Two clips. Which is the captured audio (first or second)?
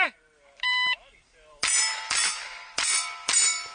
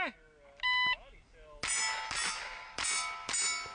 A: second